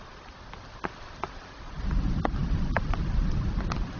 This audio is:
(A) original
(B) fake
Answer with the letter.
A